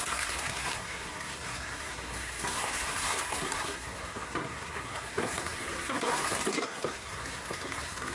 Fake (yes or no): yes